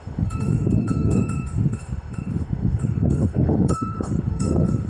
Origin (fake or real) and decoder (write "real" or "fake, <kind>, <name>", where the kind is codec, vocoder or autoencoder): fake, autoencoder, DAC-VAE